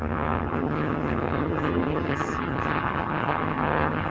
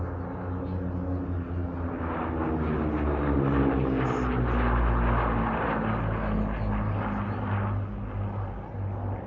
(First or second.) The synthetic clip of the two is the first